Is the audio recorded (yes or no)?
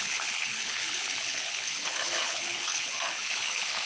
no